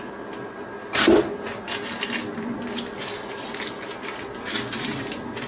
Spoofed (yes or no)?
no